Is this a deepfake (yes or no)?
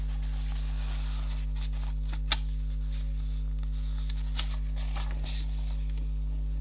no